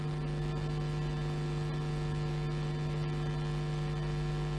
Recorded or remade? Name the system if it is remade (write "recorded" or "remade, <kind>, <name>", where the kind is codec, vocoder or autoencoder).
recorded